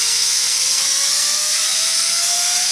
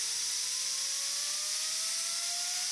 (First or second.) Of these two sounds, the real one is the second